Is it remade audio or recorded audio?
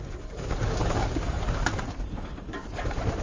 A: remade